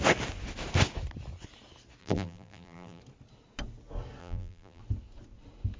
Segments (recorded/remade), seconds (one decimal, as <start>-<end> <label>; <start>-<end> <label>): 0.0-2.0 recorded; 2.0-3.0 remade; 3.0-4.2 recorded; 4.2-4.8 remade; 4.8-5.8 recorded